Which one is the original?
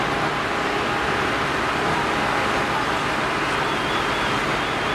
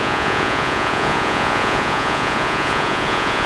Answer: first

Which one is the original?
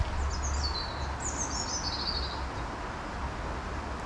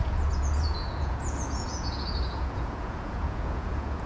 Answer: first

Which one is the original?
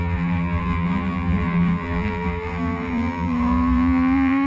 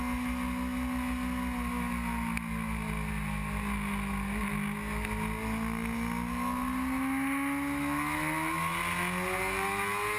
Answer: second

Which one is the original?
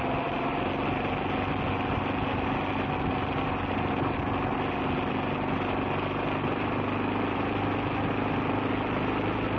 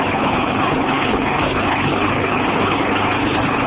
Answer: first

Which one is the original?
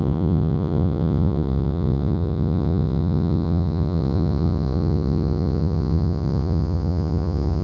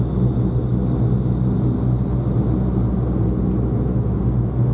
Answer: second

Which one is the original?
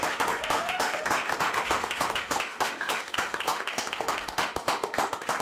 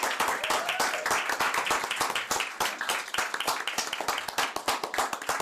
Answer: second